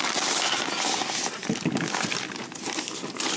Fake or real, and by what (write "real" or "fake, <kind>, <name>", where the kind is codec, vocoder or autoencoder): real